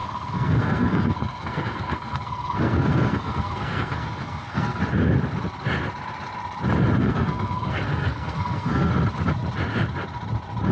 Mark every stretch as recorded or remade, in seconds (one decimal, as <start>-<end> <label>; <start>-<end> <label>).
0.0-4.8 remade; 4.8-7.0 recorded; 7.0-8.9 remade; 8.9-10.7 recorded